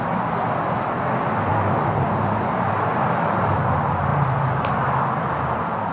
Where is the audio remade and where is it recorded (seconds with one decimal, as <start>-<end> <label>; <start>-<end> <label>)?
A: 0.0-1.5 recorded; 1.5-2.4 remade; 2.4-4.1 recorded; 4.1-4.7 remade; 4.7-5.9 recorded